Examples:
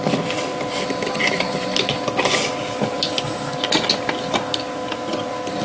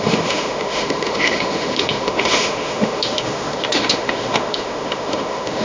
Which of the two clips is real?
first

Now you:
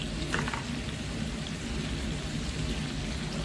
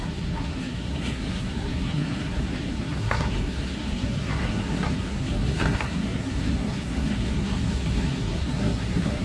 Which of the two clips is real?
first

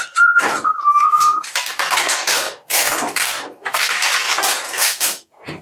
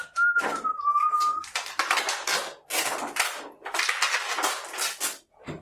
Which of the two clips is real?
second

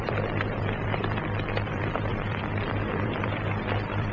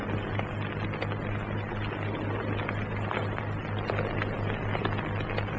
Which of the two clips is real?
second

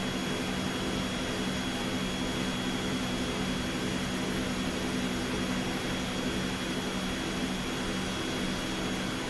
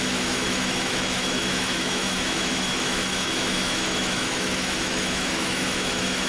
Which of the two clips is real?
first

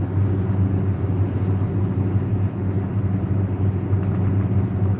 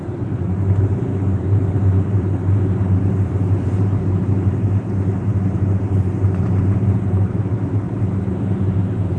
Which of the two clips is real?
first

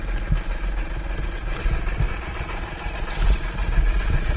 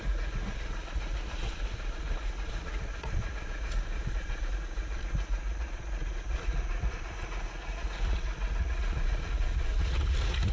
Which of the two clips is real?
first